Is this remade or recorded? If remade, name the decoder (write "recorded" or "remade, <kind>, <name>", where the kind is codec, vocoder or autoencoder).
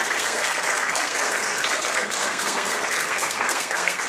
remade, codec, SNAC